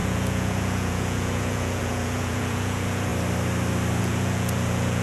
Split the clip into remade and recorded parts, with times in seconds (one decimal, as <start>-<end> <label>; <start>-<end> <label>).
0.0-3.1 remade; 3.1-4.0 recorded; 4.0-5.0 remade